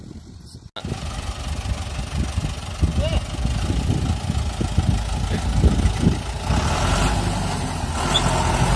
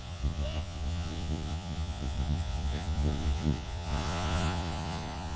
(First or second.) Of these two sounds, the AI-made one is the second